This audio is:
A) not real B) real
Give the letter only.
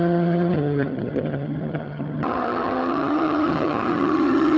A